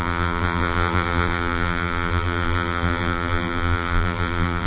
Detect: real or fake fake